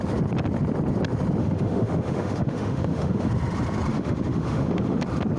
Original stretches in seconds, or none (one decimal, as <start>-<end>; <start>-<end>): 0.0-1.4; 3.3-3.9; 5.0-5.4